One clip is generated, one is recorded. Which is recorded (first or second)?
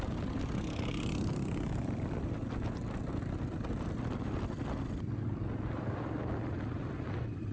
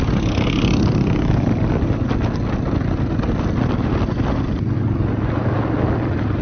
second